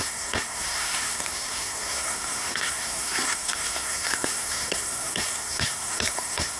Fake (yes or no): yes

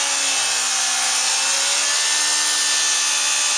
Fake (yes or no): no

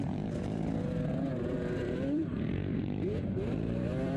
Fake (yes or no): yes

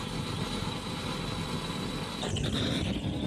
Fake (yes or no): no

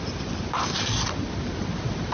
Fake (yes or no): no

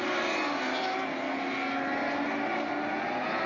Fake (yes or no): no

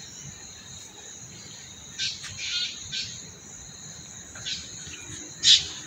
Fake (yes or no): no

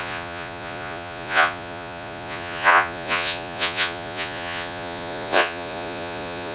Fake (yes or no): yes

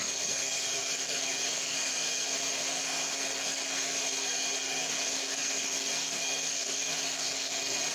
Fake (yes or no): yes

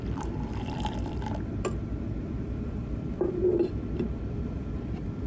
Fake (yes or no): yes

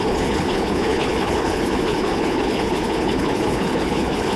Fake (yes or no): yes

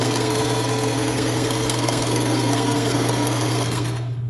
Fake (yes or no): yes